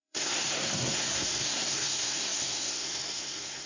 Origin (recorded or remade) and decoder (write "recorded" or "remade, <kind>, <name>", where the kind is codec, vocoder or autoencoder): remade, codec, SNAC